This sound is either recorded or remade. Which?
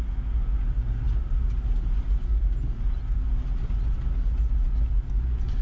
recorded